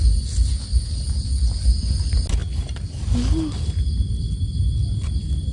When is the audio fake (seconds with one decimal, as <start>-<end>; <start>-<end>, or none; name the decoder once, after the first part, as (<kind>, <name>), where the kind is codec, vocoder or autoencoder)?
none